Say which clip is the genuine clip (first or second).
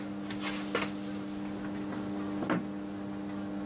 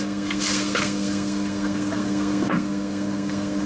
first